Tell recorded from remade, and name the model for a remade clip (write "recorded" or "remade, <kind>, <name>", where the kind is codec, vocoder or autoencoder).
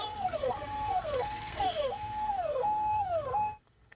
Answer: remade, codec, SNAC